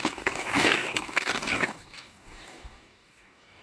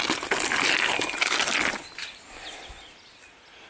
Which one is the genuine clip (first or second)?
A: second